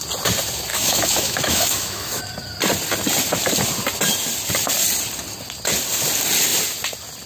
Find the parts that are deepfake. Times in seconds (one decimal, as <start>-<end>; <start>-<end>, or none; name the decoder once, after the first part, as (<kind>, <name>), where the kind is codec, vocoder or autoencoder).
0.7-2.2 (autoencoder, DAC-VAE)